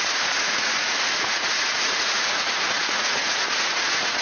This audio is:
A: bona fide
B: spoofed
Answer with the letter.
B